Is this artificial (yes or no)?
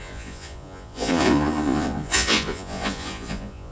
yes